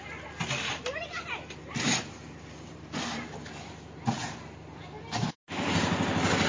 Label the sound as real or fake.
real